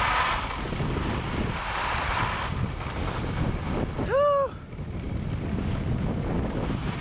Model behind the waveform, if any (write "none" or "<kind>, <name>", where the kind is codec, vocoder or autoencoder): none